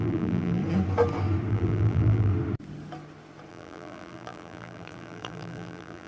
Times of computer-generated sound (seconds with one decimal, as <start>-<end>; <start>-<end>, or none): 0.0-0.6; 1.5-2.3; 3.5-6.1